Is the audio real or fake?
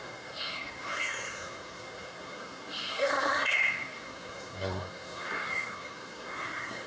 fake